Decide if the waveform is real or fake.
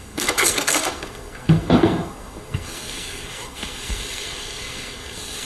fake